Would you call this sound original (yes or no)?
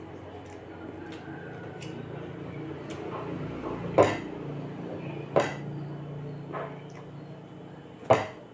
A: yes